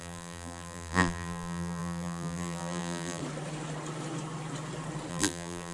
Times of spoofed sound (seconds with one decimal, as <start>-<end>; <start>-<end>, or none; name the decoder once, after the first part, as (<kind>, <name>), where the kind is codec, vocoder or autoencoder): 0.0-3.2 (vocoder, BigVGAN v2); 5.1-5.7